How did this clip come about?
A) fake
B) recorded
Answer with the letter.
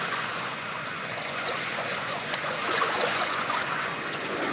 A